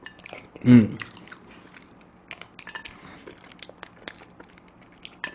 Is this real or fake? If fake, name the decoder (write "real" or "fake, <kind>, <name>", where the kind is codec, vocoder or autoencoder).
real